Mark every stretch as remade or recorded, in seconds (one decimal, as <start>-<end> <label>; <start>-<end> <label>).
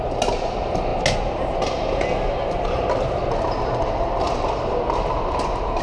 0.0-5.8 recorded